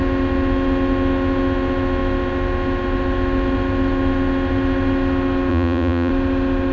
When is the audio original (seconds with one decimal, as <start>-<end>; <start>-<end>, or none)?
0.0-5.5; 6.1-6.7